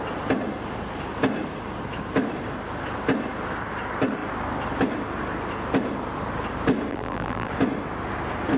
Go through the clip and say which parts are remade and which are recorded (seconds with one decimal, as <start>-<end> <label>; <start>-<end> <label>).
0.0-6.9 recorded; 6.9-7.5 remade; 7.5-8.6 recorded